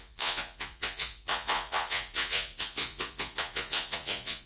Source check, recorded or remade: remade